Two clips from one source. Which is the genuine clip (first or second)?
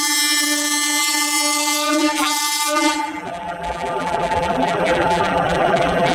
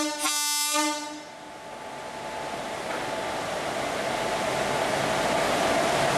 second